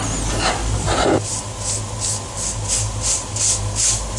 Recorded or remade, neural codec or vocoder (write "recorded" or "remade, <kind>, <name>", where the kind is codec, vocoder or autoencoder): recorded